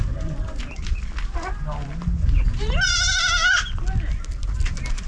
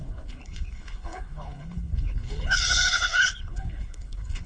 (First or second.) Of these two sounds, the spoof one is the second